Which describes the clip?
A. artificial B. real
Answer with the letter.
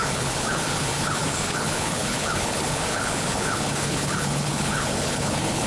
A